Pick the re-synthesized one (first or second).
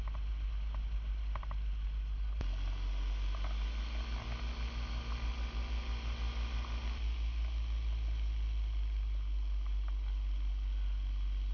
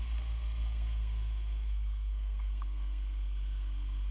second